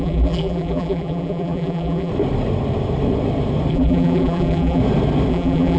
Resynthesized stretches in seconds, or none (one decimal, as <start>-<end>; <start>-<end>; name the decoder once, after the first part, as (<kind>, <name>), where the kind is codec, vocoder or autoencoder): 0.0-2.1 (vocoder, BigVGAN v2); 3.7-4.8; 5.3-5.8